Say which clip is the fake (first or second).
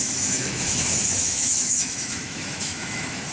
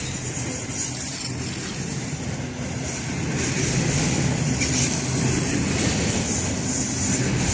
first